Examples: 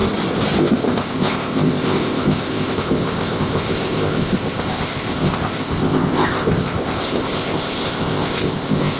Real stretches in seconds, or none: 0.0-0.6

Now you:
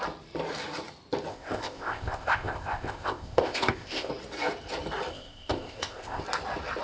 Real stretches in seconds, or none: 0.0-1.3; 4.1-5.1; 6.2-6.8

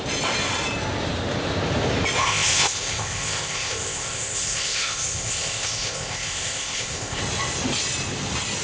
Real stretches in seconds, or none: 0.0-2.2; 7.2-8.6